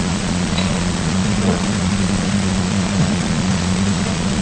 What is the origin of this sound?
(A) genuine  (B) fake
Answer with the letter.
B